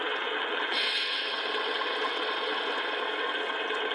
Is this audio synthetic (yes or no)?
yes